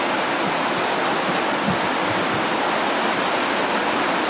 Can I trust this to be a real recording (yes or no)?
yes